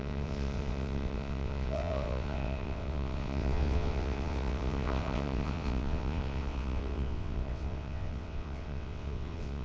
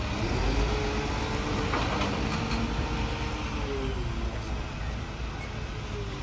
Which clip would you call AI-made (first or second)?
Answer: first